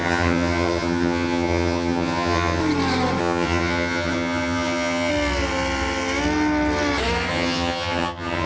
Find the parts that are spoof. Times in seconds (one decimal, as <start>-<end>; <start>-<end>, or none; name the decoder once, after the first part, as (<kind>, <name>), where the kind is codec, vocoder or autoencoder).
0.0-2.6 (vocoder, HiFi-GAN); 3.2-5.1; 7.3-8.5